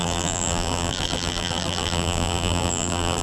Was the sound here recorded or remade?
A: remade